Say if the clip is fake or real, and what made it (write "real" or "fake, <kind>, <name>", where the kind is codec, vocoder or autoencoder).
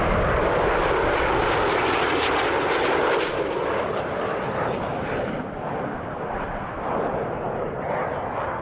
real